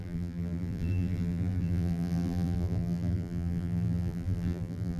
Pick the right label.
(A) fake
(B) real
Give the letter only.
A